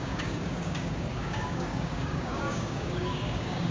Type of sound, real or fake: fake